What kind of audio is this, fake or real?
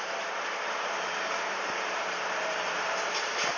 fake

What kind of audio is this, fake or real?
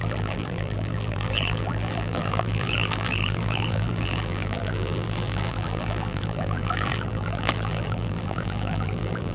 fake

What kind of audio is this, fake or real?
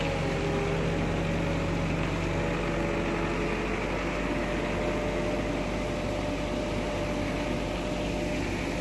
real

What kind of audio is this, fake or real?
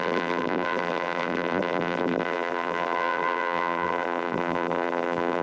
fake